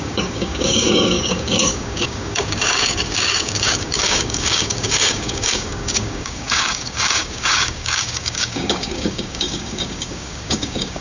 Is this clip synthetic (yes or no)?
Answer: yes